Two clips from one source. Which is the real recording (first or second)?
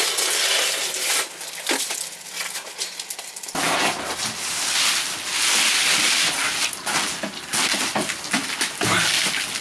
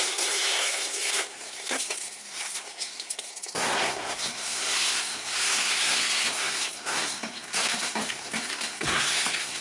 first